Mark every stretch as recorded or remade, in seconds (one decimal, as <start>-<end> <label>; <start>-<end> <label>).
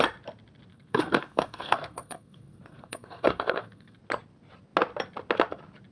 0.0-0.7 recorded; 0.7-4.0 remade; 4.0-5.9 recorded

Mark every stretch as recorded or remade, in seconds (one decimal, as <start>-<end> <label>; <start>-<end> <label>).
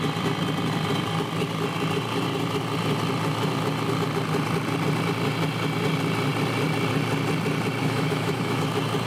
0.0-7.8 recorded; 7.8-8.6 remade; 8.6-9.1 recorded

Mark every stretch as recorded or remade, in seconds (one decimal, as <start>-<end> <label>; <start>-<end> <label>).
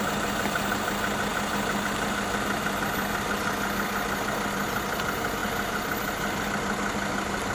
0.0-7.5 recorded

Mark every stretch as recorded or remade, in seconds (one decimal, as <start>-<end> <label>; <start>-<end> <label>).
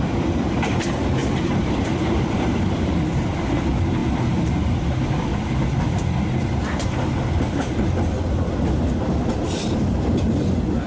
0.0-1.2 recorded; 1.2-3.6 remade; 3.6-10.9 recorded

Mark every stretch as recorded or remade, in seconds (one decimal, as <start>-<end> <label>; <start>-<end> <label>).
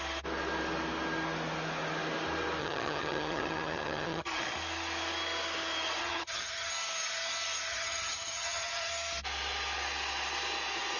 0.0-2.6 recorded; 2.6-4.4 remade; 4.4-6.0 recorded; 6.0-6.7 remade; 6.7-7.7 recorded; 7.7-8.9 remade; 8.9-11.0 recorded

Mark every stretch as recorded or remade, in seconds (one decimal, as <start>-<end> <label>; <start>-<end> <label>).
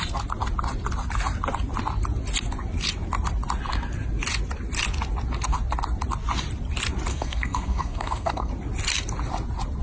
0.0-7.1 recorded; 7.1-8.5 remade; 8.5-9.8 recorded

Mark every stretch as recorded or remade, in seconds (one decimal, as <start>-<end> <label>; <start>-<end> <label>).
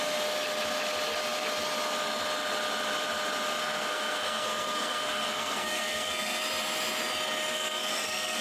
0.0-3.6 recorded; 3.6-6.4 remade; 6.4-7.5 recorded; 7.5-8.4 remade